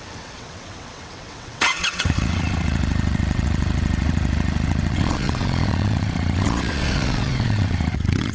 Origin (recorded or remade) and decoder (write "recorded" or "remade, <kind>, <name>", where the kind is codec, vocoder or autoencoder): remade, vocoder, WaveNeXt